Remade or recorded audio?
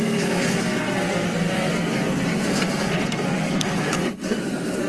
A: remade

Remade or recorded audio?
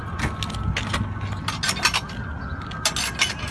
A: recorded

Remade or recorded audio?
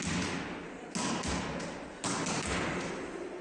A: recorded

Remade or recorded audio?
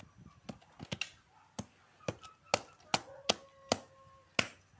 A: recorded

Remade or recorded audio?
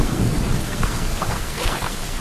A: remade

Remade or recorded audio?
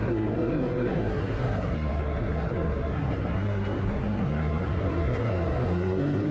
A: remade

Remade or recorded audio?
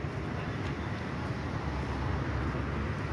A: recorded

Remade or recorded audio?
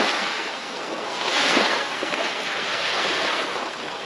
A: remade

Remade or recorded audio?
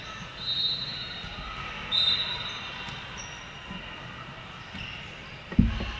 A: recorded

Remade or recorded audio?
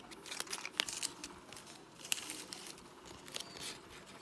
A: recorded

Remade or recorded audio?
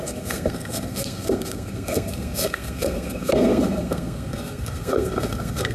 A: remade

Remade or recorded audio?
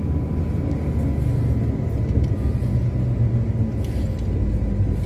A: recorded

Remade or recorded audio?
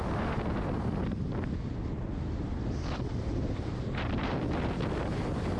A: recorded